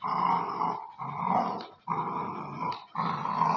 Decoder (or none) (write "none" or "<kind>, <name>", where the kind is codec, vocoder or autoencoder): none